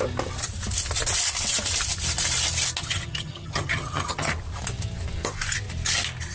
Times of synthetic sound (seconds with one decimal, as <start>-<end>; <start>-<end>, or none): 2.8-4.3